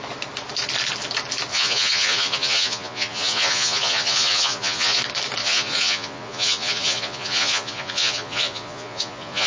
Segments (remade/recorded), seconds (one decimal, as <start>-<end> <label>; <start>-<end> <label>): 0.0-1.5 recorded; 1.5-5.0 remade; 5.0-5.4 recorded; 5.4-9.5 remade